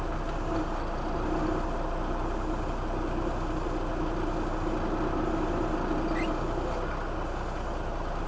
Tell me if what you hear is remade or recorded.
recorded